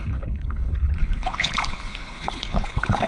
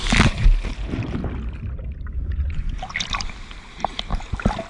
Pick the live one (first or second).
second